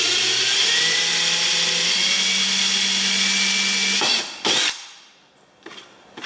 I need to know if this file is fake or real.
real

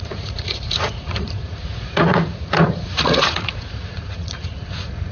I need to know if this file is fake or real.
fake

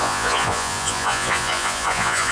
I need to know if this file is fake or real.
fake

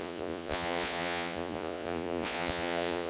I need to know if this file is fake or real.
fake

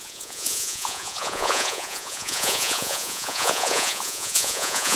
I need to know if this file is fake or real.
fake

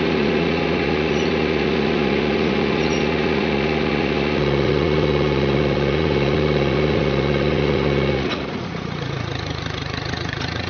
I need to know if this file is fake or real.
fake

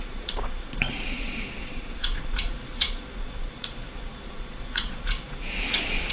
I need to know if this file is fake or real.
fake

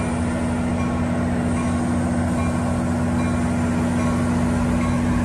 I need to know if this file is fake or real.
real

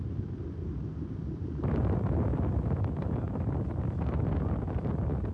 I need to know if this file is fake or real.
real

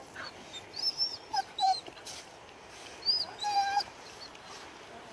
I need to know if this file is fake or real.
real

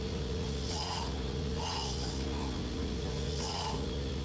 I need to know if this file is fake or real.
fake